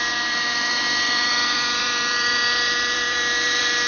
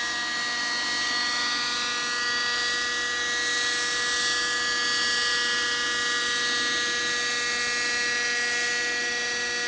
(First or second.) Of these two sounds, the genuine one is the second